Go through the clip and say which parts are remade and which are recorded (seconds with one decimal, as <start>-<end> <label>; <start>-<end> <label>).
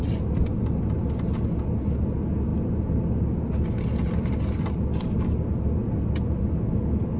0.0-7.2 recorded